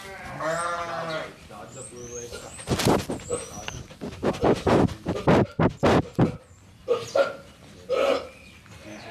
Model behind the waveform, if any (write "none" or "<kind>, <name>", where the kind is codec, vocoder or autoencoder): none